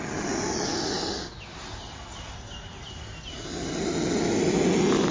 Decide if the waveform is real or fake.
real